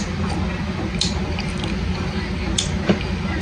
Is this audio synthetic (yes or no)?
no